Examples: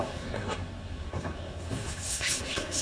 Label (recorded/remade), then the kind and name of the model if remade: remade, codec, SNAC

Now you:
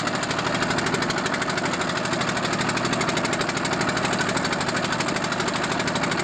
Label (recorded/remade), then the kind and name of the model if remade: recorded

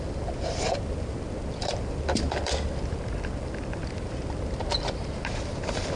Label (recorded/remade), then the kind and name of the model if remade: recorded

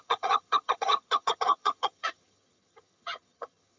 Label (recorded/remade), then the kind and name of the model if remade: remade, vocoder, HiFi-GAN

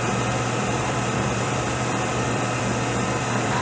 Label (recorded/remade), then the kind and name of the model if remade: remade, vocoder, BigVGAN v2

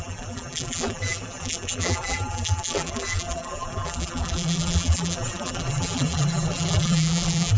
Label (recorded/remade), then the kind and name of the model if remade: remade, vocoder, BigVGAN v2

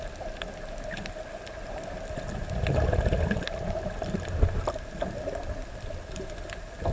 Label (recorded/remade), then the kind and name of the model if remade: recorded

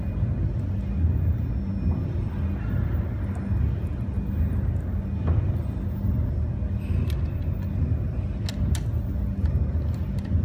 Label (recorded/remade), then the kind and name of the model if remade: recorded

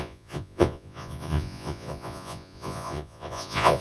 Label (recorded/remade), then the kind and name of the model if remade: remade, vocoder, Vocos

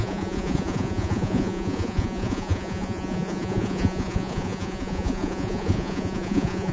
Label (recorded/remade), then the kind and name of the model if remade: remade, vocoder, Vocos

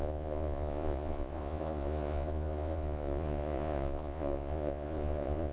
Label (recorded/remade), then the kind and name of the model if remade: remade, vocoder, Vocos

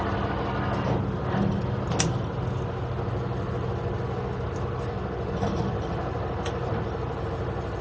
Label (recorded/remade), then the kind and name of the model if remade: recorded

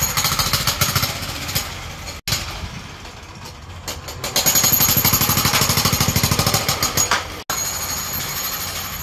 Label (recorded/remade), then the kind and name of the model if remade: recorded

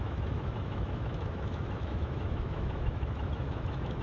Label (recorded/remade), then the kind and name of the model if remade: remade, autoencoder, DAC-VAE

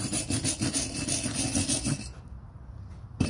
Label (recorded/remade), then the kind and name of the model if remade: recorded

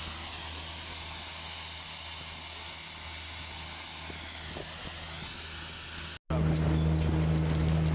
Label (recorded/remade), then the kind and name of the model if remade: recorded